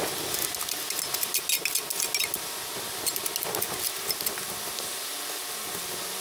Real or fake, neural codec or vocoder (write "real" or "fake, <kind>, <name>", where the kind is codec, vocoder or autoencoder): real